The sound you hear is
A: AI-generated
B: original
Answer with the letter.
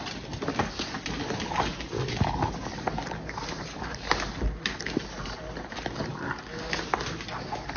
B